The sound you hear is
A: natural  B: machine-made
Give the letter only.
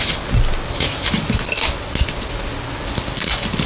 A